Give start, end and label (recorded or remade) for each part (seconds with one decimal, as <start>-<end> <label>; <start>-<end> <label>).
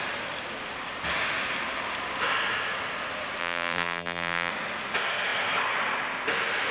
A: 0.0-3.4 recorded; 3.4-4.5 remade; 4.5-6.7 recorded